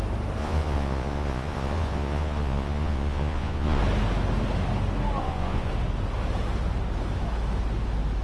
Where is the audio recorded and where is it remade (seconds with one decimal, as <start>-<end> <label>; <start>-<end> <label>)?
0.0-0.4 recorded; 0.4-3.8 remade; 3.8-5.2 recorded; 5.2-5.7 remade; 5.7-8.2 recorded

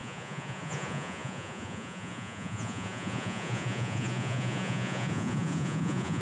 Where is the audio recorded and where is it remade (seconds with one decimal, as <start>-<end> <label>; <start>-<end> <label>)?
0.0-6.2 remade

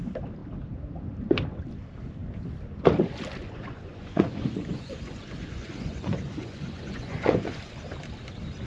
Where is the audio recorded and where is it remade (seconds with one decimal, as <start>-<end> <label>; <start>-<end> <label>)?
0.0-3.4 recorded; 3.4-7.7 remade; 7.7-8.7 recorded

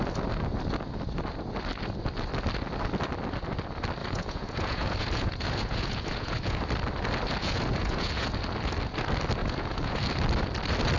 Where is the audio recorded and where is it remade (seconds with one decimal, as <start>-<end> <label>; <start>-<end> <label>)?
0.0-4.0 recorded; 4.0-6.6 remade; 6.6-7.4 recorded; 7.4-8.4 remade; 8.4-9.4 recorded; 9.4-10.0 remade; 10.0-11.0 recorded

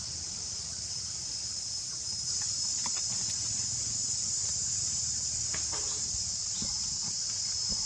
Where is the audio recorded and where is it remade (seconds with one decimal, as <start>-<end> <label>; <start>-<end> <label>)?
0.0-7.9 recorded

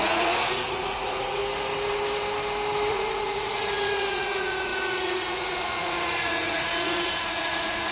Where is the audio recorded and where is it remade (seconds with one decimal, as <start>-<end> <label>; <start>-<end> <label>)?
0.0-1.4 remade; 1.4-2.9 recorded; 2.9-7.9 remade

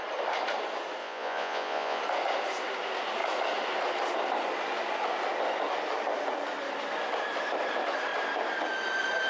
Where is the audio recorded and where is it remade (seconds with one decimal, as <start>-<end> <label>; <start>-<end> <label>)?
0.0-1.0 recorded; 1.0-2.0 remade; 2.0-9.3 recorded